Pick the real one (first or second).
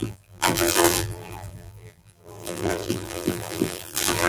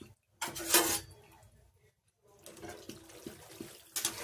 second